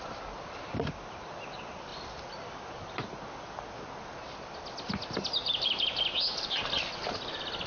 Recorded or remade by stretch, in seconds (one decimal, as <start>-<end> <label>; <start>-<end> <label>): 0.0-7.7 recorded